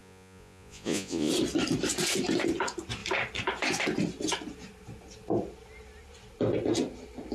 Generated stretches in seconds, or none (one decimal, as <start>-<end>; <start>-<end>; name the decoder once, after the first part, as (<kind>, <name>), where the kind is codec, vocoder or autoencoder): 0.0-1.3 (vocoder, Vocos)